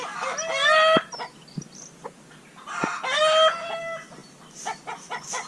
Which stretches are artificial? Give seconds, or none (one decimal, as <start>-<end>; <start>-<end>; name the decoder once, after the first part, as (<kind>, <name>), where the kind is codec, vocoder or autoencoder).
none